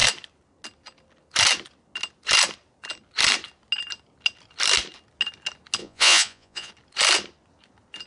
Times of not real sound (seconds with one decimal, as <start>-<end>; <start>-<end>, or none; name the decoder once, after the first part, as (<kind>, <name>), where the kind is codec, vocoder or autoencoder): 5.8-6.7 (vocoder, Vocos)